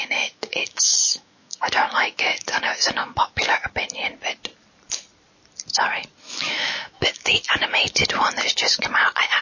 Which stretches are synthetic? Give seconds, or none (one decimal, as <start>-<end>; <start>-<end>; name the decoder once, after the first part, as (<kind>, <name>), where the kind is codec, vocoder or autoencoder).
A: 0.0-3.6 (autoencoder, DAC-VAE); 6.2-8.0